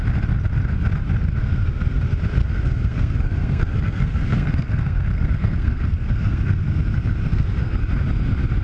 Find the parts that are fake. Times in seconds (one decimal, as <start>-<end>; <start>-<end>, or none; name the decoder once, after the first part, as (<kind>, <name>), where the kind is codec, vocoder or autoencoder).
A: 1.4-2.0 (codec, SNAC); 2.4-6.7; 7.3-7.8